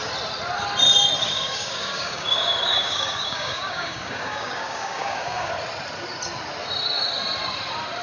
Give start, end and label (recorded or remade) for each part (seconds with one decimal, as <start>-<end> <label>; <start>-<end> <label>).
0.0-1.2 recorded; 1.2-5.5 remade; 5.5-8.0 recorded